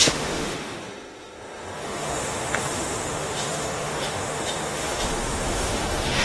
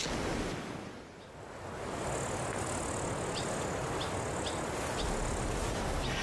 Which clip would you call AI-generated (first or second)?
first